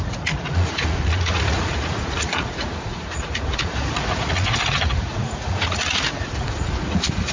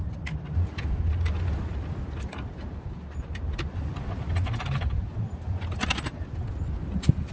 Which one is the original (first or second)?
second